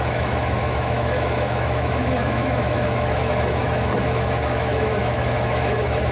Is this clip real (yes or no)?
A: no